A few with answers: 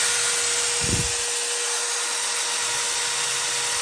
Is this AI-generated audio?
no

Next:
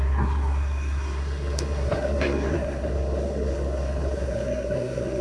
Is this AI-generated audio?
yes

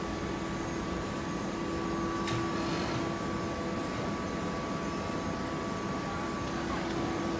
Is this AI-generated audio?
no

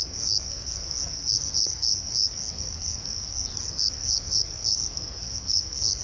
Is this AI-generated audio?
yes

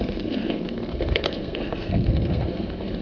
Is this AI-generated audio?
yes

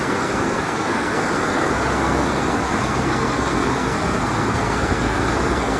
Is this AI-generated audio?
yes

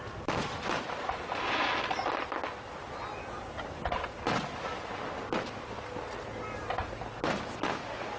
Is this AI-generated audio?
no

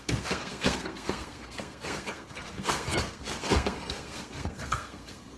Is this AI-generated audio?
yes